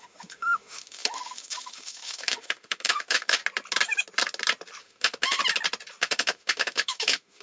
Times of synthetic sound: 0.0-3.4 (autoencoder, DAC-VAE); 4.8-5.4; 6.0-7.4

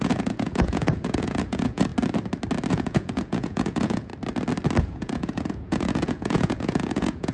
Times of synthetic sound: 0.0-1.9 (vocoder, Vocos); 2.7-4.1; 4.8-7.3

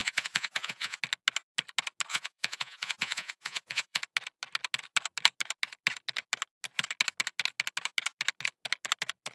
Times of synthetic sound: 0.0-1.0 (vocoder, Vocos); 2.1-4.0

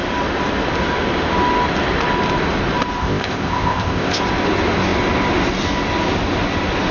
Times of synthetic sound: 3.0-4.2 (codec, ZipCodec)